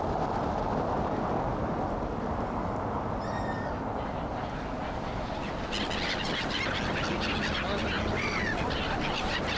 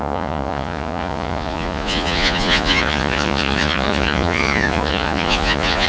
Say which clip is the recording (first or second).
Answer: first